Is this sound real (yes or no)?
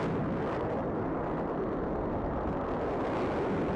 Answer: yes